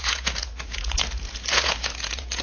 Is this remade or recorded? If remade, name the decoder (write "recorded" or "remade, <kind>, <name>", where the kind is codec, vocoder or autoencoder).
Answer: remade, vocoder, Vocos